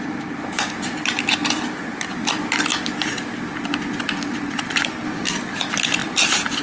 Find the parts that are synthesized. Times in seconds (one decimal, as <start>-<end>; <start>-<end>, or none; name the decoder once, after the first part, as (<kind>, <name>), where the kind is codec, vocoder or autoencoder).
6.0-6.6 (vocoder, BigVGAN v2)